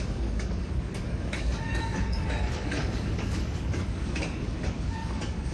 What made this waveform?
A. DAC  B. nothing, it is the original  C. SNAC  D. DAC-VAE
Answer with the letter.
A